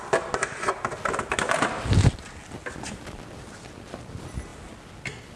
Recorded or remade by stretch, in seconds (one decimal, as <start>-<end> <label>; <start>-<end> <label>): 0.0-5.4 recorded